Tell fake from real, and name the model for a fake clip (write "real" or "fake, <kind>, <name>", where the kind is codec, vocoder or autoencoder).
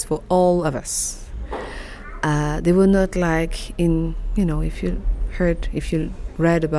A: real